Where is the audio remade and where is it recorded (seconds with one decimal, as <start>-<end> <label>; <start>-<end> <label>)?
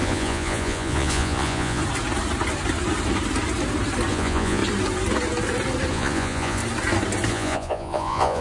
0.0-1.8 remade; 1.8-4.1 recorded; 4.1-4.6 remade; 4.6-5.9 recorded; 5.9-6.6 remade; 6.6-7.3 recorded; 7.3-8.4 remade